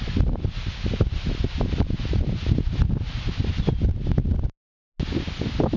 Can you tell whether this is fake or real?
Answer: real